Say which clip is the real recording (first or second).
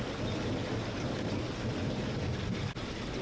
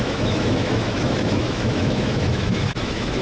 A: first